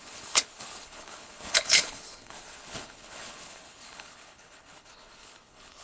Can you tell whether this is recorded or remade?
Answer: remade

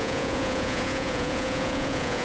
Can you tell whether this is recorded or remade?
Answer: remade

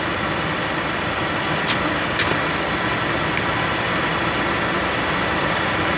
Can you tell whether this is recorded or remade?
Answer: recorded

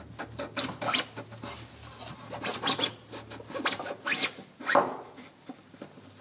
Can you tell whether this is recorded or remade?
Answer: recorded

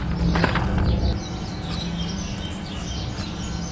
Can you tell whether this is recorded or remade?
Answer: recorded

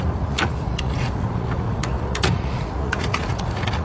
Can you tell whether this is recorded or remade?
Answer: remade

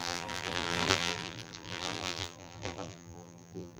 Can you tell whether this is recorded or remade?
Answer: remade